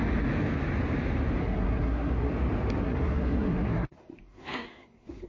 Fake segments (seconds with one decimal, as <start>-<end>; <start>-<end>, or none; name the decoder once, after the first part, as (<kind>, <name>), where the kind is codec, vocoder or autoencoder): 1.4-2.3 (codec, SNAC); 2.8-5.3